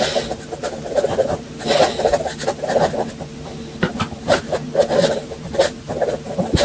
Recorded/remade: recorded